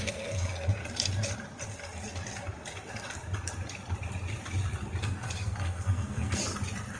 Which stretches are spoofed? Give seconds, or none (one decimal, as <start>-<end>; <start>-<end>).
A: 0.0-0.8; 5.0-6.4